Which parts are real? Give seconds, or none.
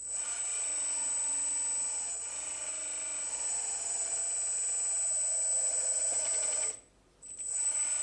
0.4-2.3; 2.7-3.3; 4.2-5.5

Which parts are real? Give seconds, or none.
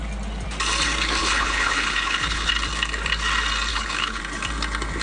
0.0-1.2; 2.5-3.7; 4.2-5.0